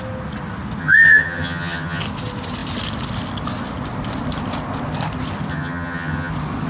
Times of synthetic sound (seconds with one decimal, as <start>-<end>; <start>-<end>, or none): 0.8-2.0; 5.5-6.3